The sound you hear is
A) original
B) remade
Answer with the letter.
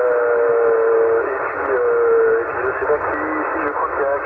A